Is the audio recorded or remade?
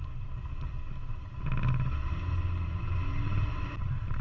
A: recorded